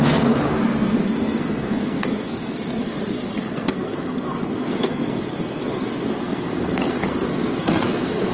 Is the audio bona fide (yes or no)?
no